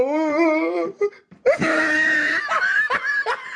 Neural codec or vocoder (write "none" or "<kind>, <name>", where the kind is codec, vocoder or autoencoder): vocoder, BigVGAN v2